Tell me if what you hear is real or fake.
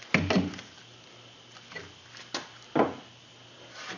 real